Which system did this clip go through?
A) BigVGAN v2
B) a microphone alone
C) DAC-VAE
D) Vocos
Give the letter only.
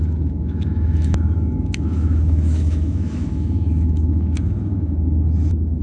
C